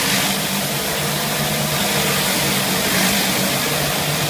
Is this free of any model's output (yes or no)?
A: yes